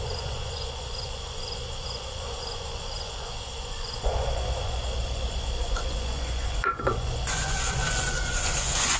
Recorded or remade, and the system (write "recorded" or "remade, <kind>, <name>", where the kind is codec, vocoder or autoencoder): remade, vocoder, Vocos